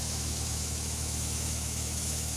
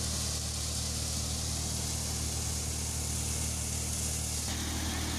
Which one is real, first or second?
second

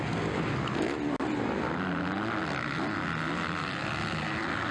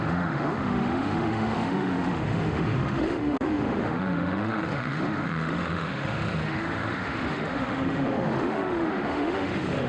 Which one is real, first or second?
first